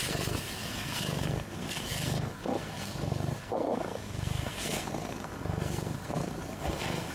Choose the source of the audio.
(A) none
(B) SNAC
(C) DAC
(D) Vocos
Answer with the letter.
B